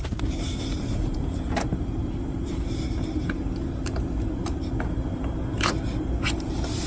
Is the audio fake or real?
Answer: fake